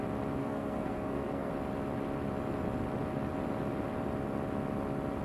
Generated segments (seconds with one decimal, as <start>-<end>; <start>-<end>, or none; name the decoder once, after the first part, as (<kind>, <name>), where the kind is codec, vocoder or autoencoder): 0.4-1.5 (codec, SNAC)